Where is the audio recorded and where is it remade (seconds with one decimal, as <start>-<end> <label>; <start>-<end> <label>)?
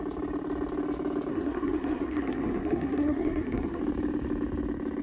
0.0-1.3 recorded; 1.3-3.8 remade; 3.8-5.0 recorded